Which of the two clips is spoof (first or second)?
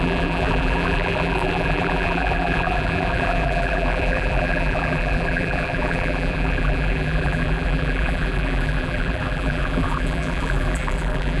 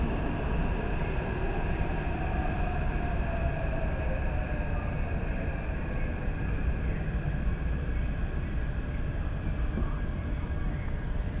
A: first